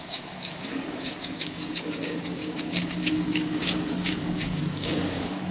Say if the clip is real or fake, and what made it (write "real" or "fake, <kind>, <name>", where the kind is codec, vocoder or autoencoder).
fake, codec, DAC